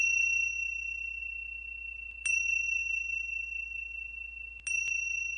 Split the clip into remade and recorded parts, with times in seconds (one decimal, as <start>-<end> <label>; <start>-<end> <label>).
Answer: 0.0-5.4 recorded